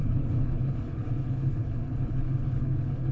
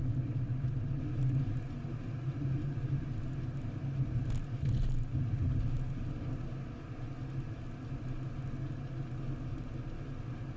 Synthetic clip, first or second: first